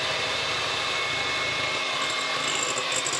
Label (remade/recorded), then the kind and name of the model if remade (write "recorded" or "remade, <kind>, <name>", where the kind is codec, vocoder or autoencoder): recorded